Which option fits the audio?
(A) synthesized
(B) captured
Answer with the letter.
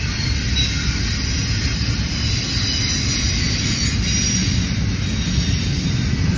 B